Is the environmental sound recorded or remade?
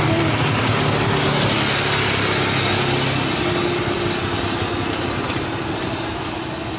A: recorded